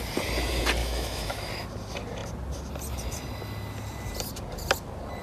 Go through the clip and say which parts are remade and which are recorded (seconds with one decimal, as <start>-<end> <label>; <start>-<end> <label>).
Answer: 0.0-0.8 recorded; 0.8-1.5 remade; 1.5-5.2 recorded